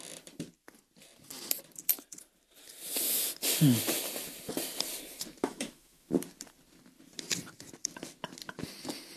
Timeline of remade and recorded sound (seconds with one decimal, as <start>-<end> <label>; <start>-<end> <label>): 0.0-5.4 recorded; 5.4-6.1 remade; 6.1-9.2 recorded